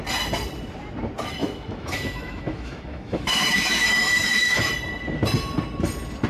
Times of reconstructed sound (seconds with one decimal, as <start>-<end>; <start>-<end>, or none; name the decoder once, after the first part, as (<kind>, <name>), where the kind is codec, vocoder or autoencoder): 1.4-4.7 (autoencoder, DAC-VAE)